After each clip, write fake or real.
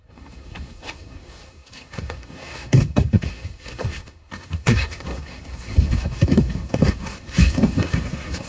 fake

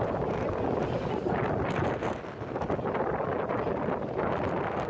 real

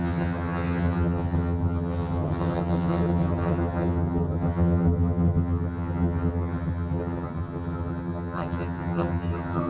fake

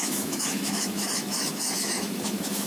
fake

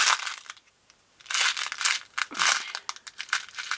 real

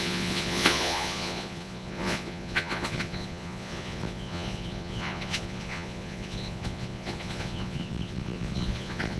fake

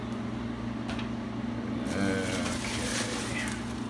real